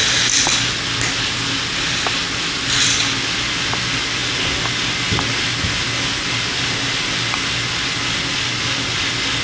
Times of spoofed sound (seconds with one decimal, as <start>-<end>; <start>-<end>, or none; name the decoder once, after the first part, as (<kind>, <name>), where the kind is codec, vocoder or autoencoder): none